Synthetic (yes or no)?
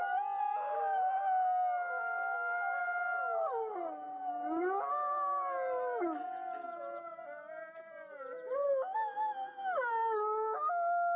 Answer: no